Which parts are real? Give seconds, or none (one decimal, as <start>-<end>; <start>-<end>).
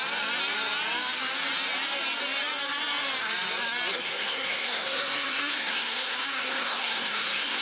0.0-3.9